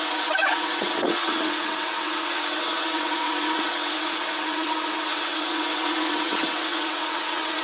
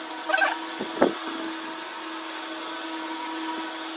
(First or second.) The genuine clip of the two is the second